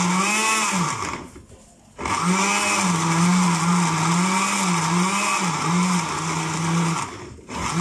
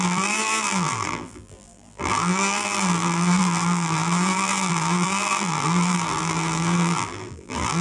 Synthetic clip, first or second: second